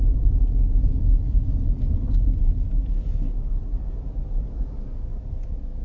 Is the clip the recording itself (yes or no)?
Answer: yes